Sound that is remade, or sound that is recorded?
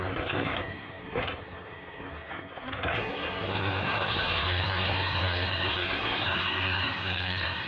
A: remade